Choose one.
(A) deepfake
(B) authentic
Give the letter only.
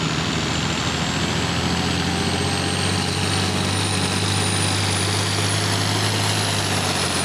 B